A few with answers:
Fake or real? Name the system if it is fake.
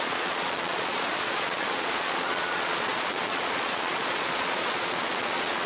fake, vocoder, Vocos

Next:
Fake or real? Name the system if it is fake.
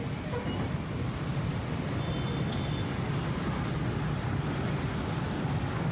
real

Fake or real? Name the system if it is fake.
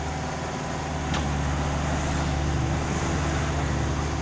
real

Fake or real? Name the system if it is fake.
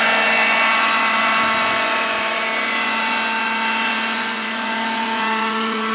fake, vocoder, Vocos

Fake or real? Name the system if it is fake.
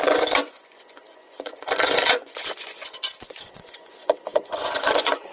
fake, vocoder, Vocos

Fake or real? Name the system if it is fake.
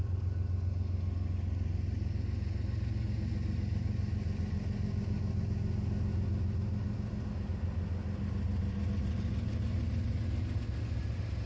real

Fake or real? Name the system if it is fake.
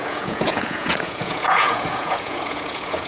fake, vocoder, Vocos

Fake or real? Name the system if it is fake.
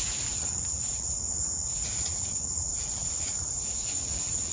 fake, vocoder, Vocos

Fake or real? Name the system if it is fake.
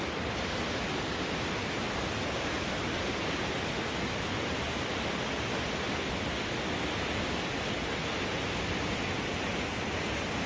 real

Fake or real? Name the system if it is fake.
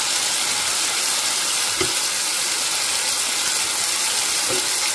real